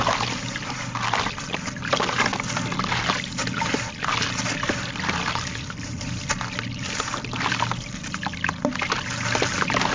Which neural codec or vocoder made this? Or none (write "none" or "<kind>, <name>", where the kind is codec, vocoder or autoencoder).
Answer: none